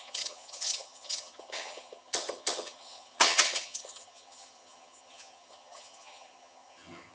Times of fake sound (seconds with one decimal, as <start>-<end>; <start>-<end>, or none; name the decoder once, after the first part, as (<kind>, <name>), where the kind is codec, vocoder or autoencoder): 0.0-7.1 (vocoder, HiFi-GAN)